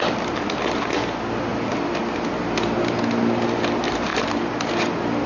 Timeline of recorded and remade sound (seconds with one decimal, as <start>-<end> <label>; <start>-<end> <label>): 0.0-5.3 recorded